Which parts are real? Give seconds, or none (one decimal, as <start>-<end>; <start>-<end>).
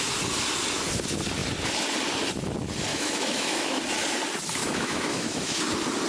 0.0-2.9; 3.8-4.6; 5.6-6.1